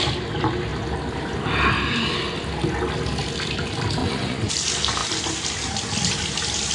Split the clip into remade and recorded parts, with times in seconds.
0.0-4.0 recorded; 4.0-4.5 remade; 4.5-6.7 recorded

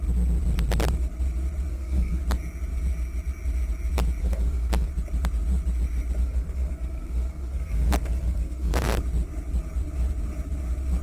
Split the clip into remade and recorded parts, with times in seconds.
0.0-1.7 recorded; 1.7-2.2 remade; 2.2-4.2 recorded; 4.2-4.9 remade; 4.9-6.2 recorded; 6.2-9.0 remade; 9.0-11.0 recorded

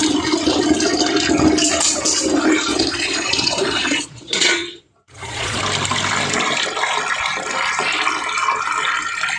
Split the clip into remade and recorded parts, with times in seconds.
0.0-2.7 recorded; 2.7-5.6 remade; 5.6-9.4 recorded